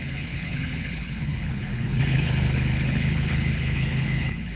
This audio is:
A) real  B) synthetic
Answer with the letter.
B